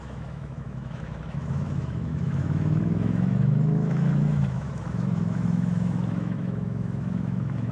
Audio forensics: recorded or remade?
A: remade